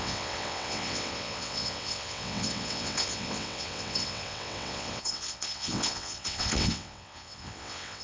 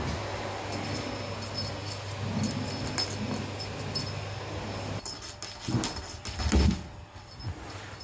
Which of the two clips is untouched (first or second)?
second